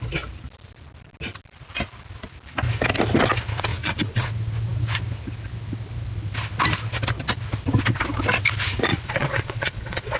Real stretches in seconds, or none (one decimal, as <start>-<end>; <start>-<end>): 0.0-3.7; 4.3-8.9